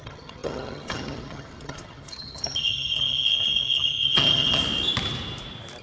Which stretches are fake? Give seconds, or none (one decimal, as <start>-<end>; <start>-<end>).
0.0-4.6